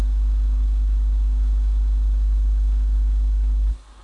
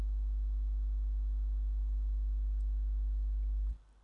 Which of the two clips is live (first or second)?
second